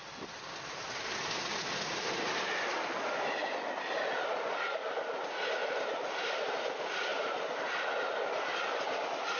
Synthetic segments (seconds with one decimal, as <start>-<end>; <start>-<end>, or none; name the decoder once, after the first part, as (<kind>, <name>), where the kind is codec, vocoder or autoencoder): 5.6-6.5 (vocoder, BigVGAN v2); 7.1-7.8